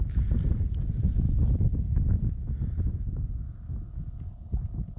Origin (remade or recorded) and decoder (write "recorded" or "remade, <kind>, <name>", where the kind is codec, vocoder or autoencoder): recorded